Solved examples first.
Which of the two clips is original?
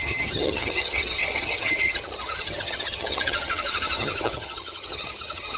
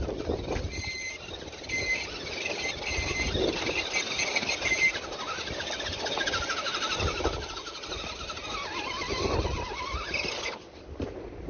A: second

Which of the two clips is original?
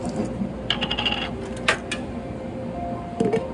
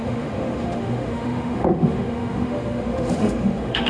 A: first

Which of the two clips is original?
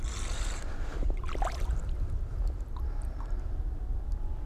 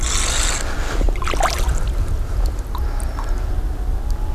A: second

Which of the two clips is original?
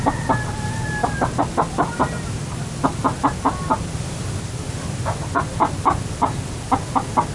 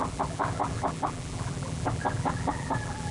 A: first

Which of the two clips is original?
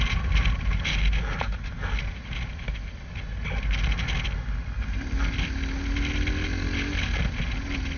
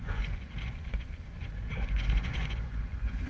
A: first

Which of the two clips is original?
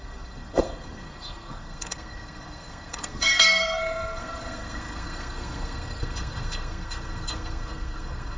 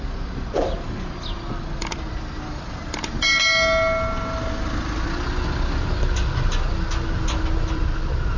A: second